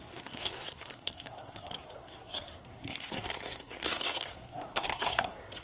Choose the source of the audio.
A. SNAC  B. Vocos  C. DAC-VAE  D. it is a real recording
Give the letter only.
A